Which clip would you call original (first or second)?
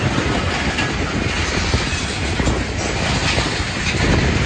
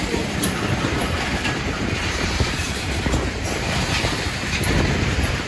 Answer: first